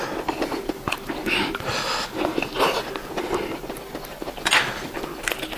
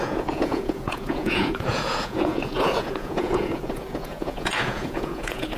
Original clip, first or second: first